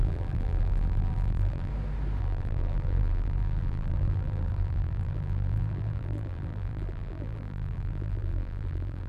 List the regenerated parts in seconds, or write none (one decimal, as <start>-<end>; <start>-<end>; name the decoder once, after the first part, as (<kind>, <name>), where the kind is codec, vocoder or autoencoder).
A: 0.0-1.7 (vocoder, BigVGAN v2); 2.2-9.1